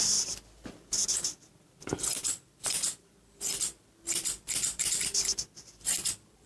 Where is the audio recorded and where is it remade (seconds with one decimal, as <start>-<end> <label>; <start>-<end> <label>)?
0.0-6.5 remade